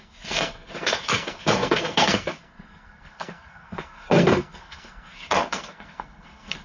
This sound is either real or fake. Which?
fake